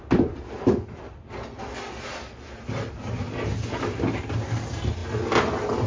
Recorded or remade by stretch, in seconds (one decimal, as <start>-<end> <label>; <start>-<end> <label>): 0.0-5.9 recorded